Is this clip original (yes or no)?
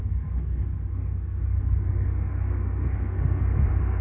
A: no